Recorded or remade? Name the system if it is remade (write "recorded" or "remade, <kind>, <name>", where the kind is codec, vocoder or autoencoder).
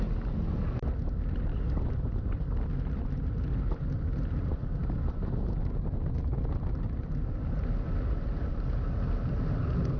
recorded